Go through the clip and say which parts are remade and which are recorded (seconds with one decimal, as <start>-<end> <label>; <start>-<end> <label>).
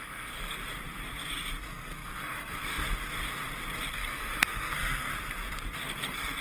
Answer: 0.0-0.6 remade; 0.6-1.7 recorded; 1.7-2.8 remade; 2.8-3.9 recorded; 3.9-5.1 remade; 5.1-5.8 recorded; 5.8-6.4 remade